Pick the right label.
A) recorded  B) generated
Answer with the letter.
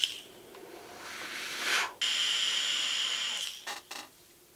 A